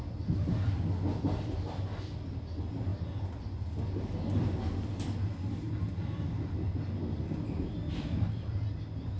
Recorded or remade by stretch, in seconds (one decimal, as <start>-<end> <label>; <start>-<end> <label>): 0.0-9.2 recorded